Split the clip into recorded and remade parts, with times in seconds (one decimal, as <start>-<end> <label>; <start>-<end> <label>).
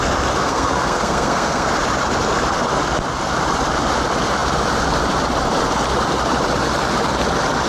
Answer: 0.0-0.4 recorded; 0.4-1.7 remade; 1.7-7.7 recorded